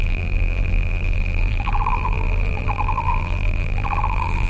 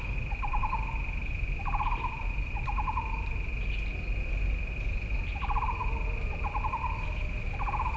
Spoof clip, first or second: first